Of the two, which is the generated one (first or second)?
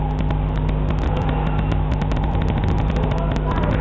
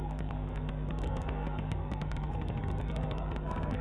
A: second